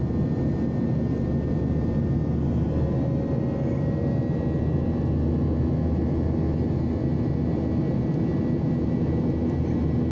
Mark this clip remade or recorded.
recorded